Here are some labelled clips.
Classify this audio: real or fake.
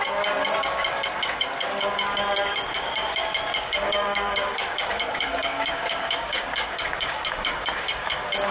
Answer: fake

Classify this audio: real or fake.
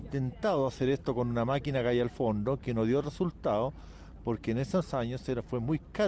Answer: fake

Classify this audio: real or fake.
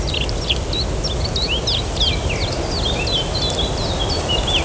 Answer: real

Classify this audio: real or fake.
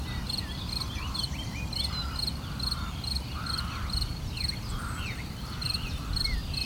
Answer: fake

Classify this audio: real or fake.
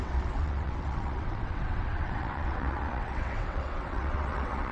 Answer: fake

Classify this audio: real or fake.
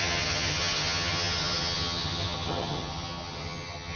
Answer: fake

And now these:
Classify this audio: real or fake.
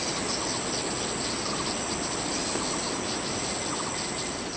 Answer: real